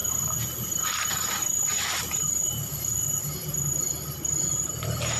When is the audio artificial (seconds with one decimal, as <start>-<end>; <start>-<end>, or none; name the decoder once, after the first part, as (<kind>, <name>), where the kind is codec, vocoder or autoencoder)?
1.7-3.7 (vocoder, BigVGAN v2); 4.5-5.2

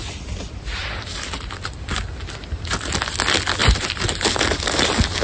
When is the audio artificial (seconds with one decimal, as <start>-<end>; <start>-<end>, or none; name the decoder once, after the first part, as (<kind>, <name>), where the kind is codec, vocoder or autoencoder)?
0.8-2.1 (vocoder, BigVGAN v2); 3.6-4.8

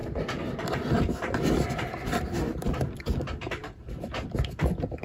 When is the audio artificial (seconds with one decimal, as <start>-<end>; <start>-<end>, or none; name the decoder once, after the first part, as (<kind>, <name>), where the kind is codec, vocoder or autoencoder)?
0.0-3.0 (vocoder, BigVGAN v2); 3.6-5.0

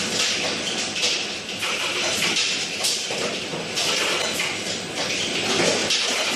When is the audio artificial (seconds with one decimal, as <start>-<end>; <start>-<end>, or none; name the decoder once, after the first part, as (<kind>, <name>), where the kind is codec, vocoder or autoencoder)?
none

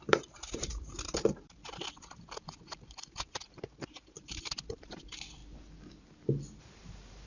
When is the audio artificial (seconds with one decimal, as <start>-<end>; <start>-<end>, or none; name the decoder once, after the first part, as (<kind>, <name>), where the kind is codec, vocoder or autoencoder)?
0.0-5.4 (vocoder, BigVGAN v2); 6.6-7.3